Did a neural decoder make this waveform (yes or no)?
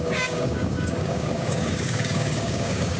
yes